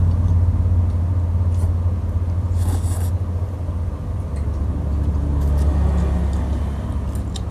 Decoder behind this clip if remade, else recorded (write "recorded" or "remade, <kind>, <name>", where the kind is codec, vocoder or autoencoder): recorded